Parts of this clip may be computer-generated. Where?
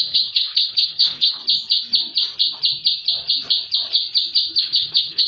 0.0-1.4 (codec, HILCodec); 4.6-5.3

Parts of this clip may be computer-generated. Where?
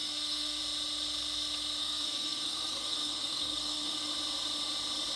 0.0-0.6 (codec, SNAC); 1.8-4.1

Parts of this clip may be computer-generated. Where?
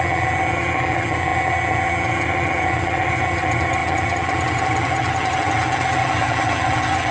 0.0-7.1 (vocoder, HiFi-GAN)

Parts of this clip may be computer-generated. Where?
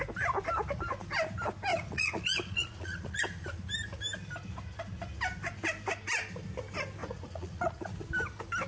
1.7-3.2 (vocoder, Vocos); 7.0-7.8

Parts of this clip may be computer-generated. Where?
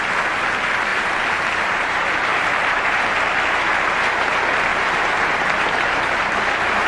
0.9-3.0 (vocoder, BigVGAN v2); 4.7-6.2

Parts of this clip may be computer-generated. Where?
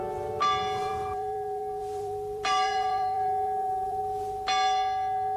0.8-4.0 (vocoder, BigVGAN v2)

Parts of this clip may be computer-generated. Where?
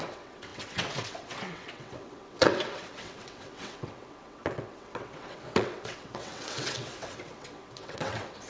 0.0-8.5 (vocoder, WaveNeXt)